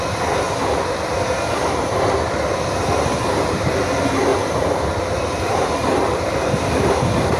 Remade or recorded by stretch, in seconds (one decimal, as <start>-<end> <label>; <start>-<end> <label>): 0.0-4.3 recorded; 4.3-7.4 remade